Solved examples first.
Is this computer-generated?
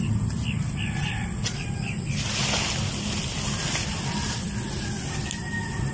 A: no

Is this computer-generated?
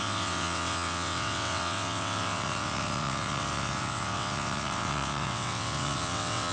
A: yes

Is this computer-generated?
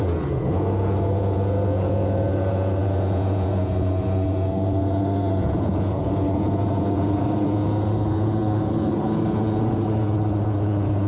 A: yes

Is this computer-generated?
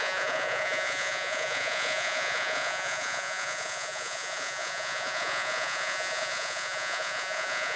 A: yes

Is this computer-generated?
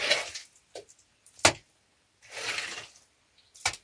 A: no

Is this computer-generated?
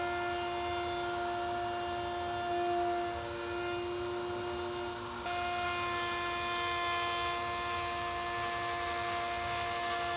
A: no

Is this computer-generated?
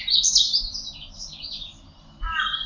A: no